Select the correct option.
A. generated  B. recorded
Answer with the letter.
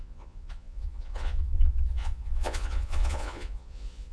A